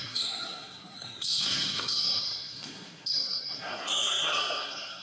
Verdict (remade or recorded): remade